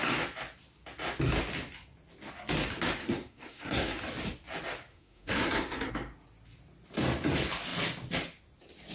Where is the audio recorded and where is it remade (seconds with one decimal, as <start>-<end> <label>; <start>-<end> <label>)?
0.0-3.0 recorded; 3.0-4.0 remade; 4.0-4.9 recorded; 4.9-5.9 remade; 5.9-8.9 recorded